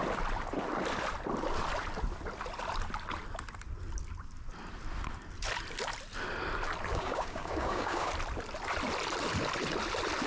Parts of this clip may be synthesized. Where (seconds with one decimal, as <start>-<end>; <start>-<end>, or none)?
6.9-8.1